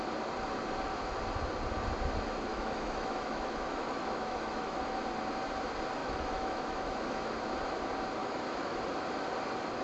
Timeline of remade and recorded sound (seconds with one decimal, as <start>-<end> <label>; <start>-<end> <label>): 0.0-2.5 recorded; 2.5-4.8 remade; 4.8-6.0 recorded; 6.0-7.3 remade; 7.3-8.2 recorded; 8.2-8.8 remade; 8.8-9.8 recorded